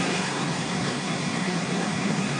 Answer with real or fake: fake